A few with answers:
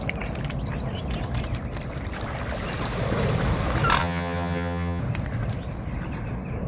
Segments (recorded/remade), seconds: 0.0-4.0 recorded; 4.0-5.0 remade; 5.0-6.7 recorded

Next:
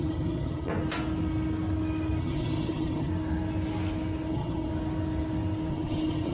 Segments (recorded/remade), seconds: 0.0-0.7 remade; 0.7-2.2 recorded; 2.2-3.1 remade; 3.1-4.3 recorded; 4.3-4.7 remade; 4.7-5.7 recorded; 5.7-6.3 remade

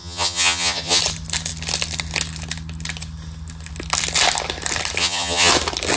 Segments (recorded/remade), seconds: 0.0-1.0 remade; 1.0-5.0 recorded; 5.0-5.5 remade; 5.5-6.0 recorded

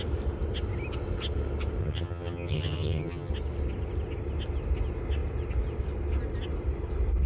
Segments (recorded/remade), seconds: 0.0-1.8 recorded; 1.8-3.3 remade; 3.3-7.3 recorded

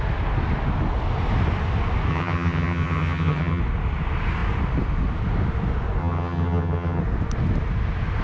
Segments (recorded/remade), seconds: 0.0-2.1 recorded; 2.1-3.6 remade; 3.6-6.0 recorded; 6.0-7.0 remade; 7.0-8.2 recorded

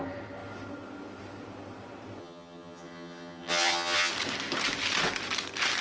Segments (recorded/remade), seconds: 0.0-2.2 recorded; 2.2-4.1 remade; 4.1-5.8 recorded

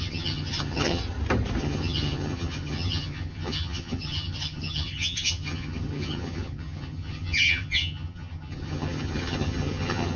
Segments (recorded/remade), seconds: 0.0-1.0 remade; 1.0-1.6 recorded; 1.6-10.2 remade